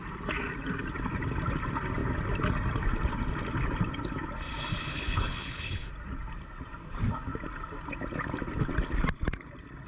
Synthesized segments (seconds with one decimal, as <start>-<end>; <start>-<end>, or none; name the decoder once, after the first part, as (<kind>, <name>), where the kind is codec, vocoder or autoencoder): 4.9-5.9 (codec, HILCodec)